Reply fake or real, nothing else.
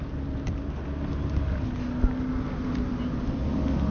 real